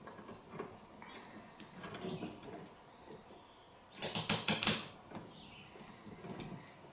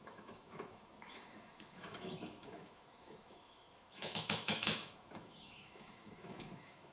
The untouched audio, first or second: first